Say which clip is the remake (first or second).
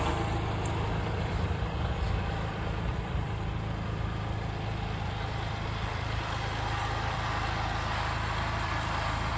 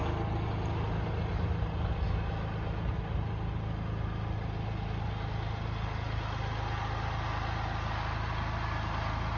first